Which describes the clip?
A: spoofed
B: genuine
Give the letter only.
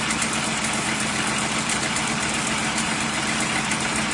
B